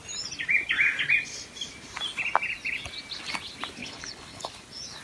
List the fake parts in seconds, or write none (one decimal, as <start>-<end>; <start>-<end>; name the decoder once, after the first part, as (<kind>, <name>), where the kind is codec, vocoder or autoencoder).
3.8-4.5 (codec, HILCodec)

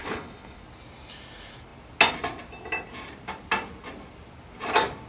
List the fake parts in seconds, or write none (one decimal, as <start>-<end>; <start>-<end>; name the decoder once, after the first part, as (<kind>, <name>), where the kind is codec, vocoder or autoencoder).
0.0-0.6 (codec, HILCodec)

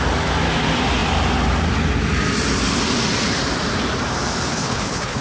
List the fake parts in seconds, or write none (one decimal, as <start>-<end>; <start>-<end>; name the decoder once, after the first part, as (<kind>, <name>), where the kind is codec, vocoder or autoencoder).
4.5-5.2 (codec, HILCodec)

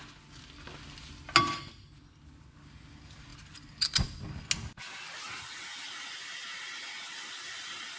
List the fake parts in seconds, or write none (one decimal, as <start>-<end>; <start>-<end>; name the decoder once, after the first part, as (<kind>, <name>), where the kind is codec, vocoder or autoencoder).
none

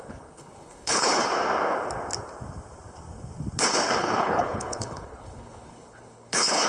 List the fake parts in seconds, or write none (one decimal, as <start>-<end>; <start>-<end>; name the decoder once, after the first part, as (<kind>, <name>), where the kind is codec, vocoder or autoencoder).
0.0-1.3 (codec, HILCodec); 4.0-6.7

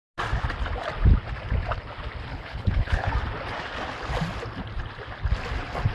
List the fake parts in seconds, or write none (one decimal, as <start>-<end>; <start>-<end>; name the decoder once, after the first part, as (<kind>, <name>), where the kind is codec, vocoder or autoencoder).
2.3-3.1 (codec, HILCodec)